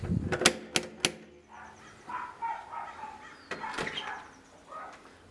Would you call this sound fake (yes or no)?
no